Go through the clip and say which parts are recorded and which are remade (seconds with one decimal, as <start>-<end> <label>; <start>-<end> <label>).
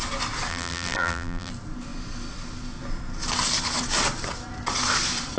0.0-0.5 recorded; 0.5-1.5 remade; 1.5-5.4 recorded